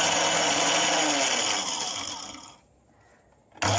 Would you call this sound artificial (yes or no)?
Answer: no